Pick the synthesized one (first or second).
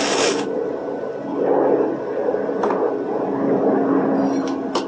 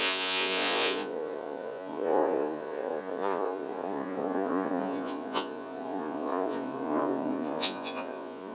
second